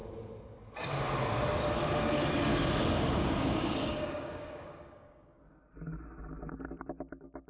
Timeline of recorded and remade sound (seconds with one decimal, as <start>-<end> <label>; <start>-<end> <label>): 0.0-2.5 recorded; 2.5-5.4 remade; 5.4-7.5 recorded

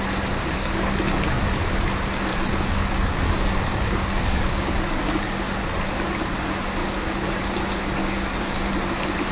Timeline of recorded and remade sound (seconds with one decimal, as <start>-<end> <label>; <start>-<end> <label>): 0.0-0.6 recorded; 0.6-1.9 remade; 1.9-2.3 recorded; 2.3-5.2 remade; 5.2-6.8 recorded; 6.8-7.4 remade; 7.4-8.0 recorded; 8.0-8.7 remade; 8.7-9.3 recorded

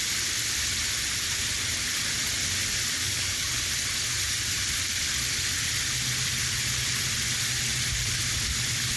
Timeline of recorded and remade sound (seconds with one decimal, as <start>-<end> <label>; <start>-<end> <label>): 0.0-3.0 recorded; 3.0-3.5 remade; 3.5-9.0 recorded

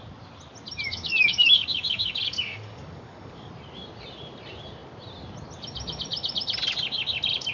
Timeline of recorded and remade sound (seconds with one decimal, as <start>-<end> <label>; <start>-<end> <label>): 0.0-0.9 recorded; 0.9-3.5 remade; 3.5-7.5 recorded

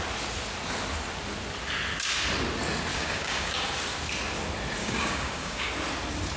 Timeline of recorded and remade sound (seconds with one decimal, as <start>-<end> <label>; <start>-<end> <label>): 0.0-2.9 recorded; 2.9-3.6 remade; 3.6-4.8 recorded; 4.8-5.7 remade; 5.7-6.4 recorded

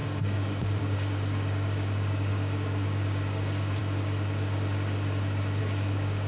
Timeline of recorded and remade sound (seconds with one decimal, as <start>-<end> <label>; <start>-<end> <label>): 0.0-3.8 remade; 3.8-5.6 recorded; 5.6-6.3 remade